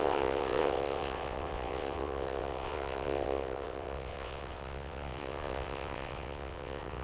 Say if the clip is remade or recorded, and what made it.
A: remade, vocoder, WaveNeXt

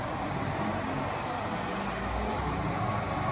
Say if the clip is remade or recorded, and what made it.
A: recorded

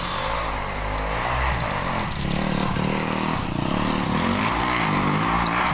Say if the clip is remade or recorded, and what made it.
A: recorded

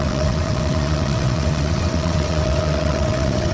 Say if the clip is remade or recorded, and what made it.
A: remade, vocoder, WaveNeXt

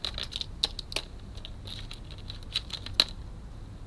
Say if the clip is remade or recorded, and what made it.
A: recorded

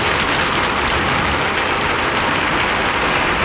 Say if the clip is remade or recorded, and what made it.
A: recorded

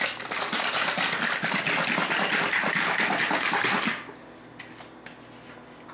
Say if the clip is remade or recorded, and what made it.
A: recorded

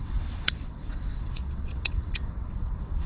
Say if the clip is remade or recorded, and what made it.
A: remade, vocoder, WaveNeXt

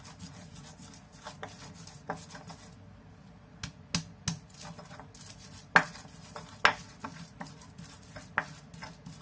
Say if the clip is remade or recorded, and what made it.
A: recorded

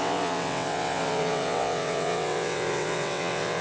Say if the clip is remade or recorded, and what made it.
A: remade, vocoder, WaveNeXt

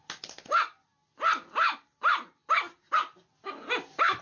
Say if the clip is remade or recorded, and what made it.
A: recorded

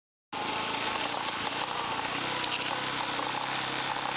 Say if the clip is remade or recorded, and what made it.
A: recorded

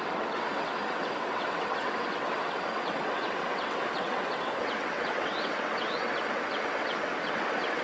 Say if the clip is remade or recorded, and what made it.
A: remade, vocoder, WaveNeXt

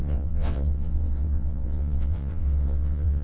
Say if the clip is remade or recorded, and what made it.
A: remade, vocoder, WaveNeXt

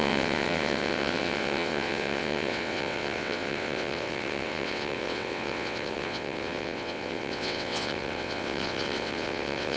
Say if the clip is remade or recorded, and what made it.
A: remade, vocoder, WaveNeXt